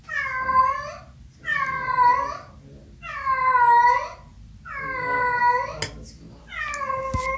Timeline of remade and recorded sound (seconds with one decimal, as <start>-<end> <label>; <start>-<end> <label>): 0.0-7.4 recorded